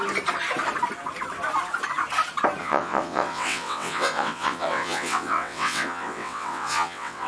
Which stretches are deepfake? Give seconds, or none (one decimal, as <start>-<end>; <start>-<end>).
2.6-7.3